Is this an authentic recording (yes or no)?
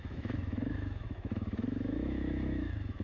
no